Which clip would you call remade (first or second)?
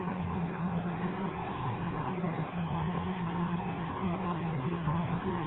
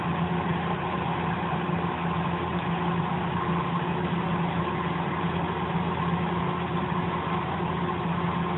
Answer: first